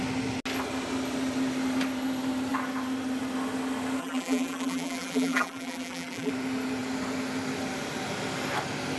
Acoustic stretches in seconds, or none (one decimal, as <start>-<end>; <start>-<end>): 0.0-4.0; 6.3-9.0